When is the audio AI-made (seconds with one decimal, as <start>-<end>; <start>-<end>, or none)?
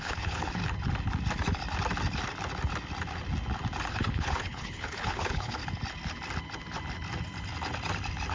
0.0-0.6; 3.9-5.6